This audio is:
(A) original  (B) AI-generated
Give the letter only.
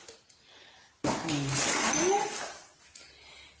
A